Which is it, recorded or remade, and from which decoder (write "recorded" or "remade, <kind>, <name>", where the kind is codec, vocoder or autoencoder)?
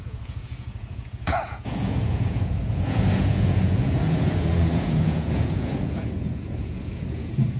remade, vocoder, Vocos